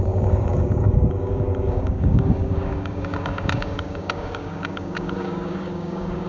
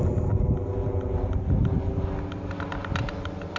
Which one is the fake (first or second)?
first